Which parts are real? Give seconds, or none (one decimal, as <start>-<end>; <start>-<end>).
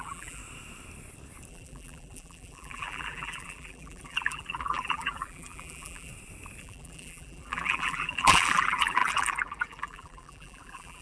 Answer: 0.4-1.5; 6.1-6.6